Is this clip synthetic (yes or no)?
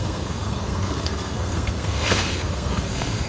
yes